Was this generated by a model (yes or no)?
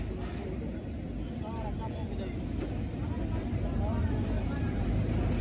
no